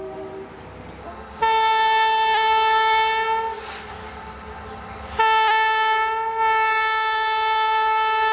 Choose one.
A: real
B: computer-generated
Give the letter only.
A